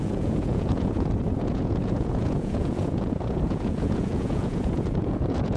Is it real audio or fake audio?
fake